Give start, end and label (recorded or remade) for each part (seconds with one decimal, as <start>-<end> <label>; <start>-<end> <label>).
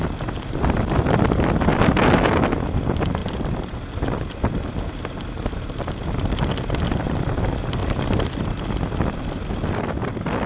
0.0-3.2 recorded; 3.2-4.0 remade; 4.0-7.8 recorded; 7.8-10.1 remade; 10.1-10.5 recorded